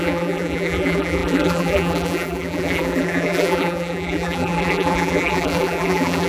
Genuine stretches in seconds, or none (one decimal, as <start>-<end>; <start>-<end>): none